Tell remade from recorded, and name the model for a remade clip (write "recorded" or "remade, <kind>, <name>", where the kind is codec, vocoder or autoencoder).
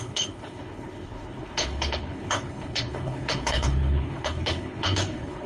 remade, codec, HILCodec